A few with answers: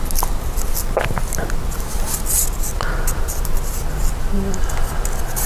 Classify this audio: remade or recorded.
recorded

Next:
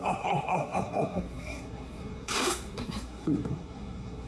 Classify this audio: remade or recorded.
remade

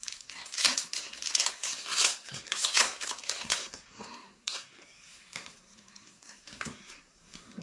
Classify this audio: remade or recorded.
remade